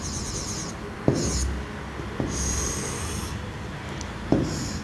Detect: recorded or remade recorded